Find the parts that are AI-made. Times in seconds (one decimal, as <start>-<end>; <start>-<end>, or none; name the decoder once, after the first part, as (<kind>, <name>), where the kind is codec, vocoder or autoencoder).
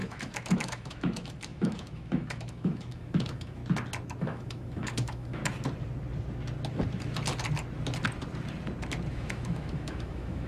0.0-3.6 (autoencoder, DAC-VAE); 4.2-5.4; 9.1-10.5